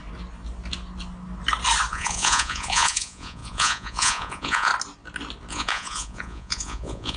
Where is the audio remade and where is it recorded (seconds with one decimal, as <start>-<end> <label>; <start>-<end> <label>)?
0.0-1.9 recorded; 1.9-4.7 remade; 4.7-5.5 recorded; 5.5-7.2 remade

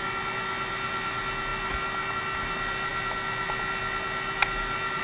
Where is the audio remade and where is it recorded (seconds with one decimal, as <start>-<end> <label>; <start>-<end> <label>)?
0.0-5.0 recorded

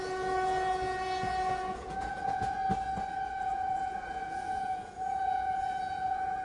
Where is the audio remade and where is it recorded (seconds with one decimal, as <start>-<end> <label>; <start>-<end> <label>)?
0.0-2.6 remade; 2.6-3.4 recorded; 3.4-6.4 remade